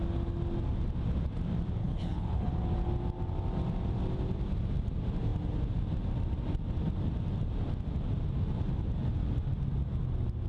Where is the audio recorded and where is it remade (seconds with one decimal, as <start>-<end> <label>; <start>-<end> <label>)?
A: 0.0-1.8 recorded; 1.8-2.5 remade; 2.5-10.5 recorded